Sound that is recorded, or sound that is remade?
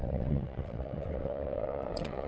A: remade